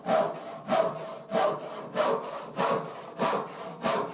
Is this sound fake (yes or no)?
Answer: no